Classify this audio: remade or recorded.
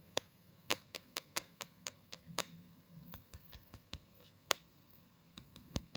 remade